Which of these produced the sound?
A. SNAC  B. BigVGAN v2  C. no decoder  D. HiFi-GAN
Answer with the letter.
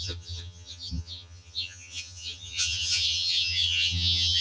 D